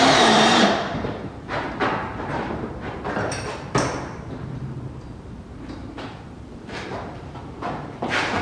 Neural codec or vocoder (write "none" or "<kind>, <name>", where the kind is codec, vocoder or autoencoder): vocoder, BigVGAN v2